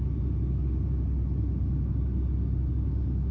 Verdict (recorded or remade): recorded